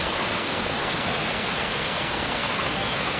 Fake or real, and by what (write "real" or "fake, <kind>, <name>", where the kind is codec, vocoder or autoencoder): fake, codec, SNAC